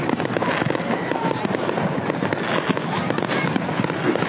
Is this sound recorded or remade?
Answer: recorded